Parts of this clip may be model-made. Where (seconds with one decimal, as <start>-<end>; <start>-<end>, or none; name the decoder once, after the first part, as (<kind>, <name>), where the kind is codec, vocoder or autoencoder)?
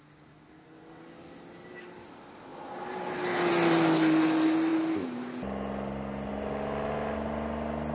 none